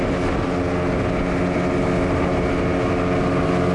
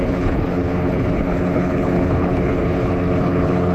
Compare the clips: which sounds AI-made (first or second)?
second